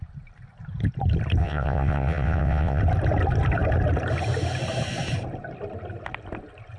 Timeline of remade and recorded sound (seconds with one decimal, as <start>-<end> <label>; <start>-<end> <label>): 0.0-1.4 recorded; 1.4-2.8 remade; 2.8-6.8 recorded